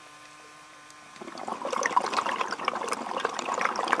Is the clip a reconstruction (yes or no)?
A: yes